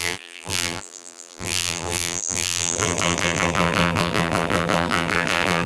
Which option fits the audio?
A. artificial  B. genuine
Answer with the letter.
A